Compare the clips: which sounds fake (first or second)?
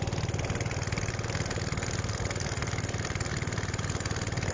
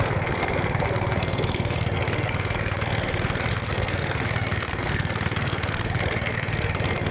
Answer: second